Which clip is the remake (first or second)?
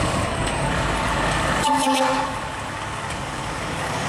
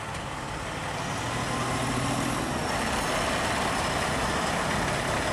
first